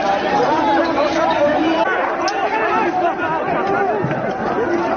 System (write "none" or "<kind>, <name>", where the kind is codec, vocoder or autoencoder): none